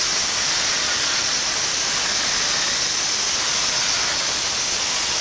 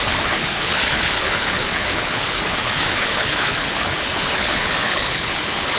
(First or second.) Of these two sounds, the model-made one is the second